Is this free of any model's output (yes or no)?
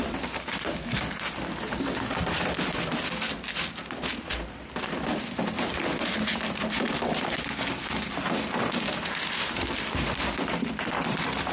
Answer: no